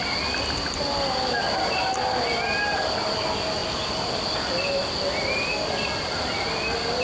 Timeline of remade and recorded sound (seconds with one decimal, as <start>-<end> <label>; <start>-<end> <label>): 0.0-7.0 recorded